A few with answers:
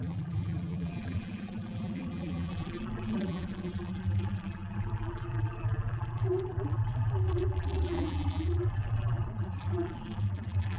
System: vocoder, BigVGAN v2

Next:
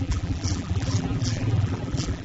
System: vocoder, BigVGAN v2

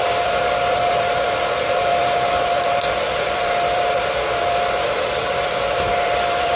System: vocoder, BigVGAN v2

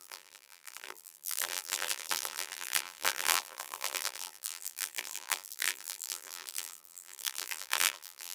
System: vocoder, BigVGAN v2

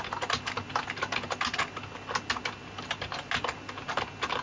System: none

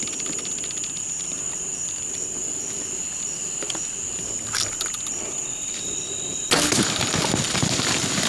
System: none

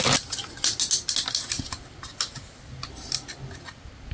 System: none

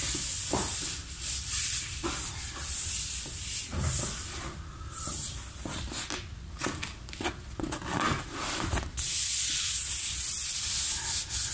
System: none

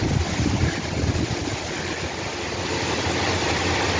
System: none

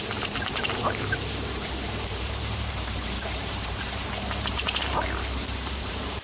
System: vocoder, BigVGAN v2